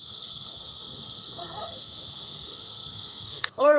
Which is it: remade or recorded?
remade